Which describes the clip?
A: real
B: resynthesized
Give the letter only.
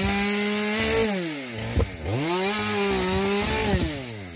A